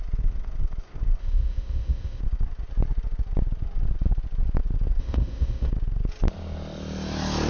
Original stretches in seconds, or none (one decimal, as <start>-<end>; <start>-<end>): 0.0-1.2; 2.2-5.0; 5.7-7.5